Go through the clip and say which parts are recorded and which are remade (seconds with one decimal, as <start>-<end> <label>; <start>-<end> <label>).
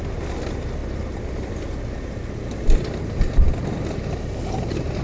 0.0-5.0 recorded